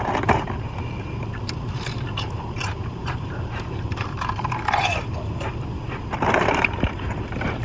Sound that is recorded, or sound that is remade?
remade